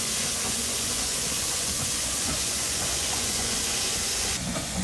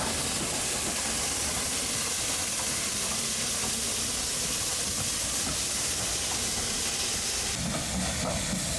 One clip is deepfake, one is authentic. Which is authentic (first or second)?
second